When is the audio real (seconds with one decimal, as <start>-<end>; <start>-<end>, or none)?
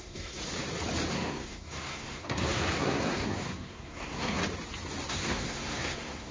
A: 0.4-1.1; 4.4-5.1